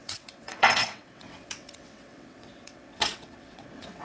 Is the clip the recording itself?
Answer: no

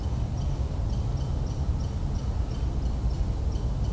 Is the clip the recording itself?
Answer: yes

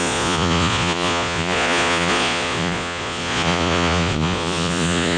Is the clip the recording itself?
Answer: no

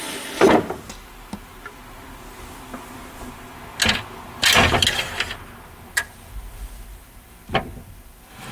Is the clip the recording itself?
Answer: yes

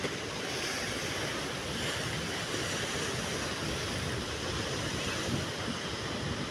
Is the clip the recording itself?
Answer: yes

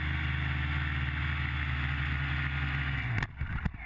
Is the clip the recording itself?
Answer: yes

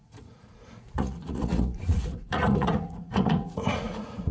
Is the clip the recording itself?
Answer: no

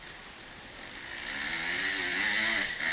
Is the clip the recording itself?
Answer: yes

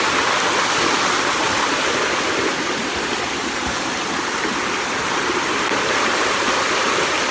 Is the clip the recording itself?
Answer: yes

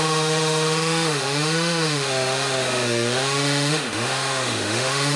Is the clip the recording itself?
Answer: no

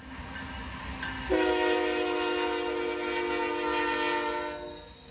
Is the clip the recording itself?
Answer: yes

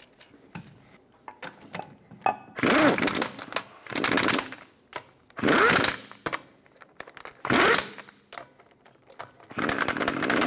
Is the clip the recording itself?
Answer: yes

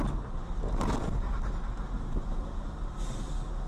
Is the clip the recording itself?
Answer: yes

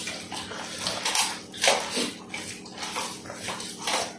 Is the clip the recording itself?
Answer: yes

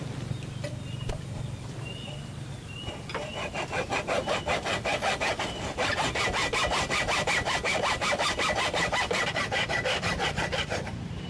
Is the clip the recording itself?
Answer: no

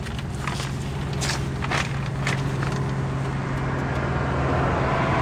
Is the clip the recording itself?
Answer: yes